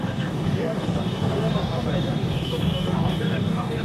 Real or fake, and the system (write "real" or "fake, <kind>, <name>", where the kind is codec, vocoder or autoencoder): fake, codec, DAC